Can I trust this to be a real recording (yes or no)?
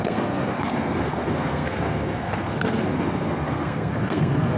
no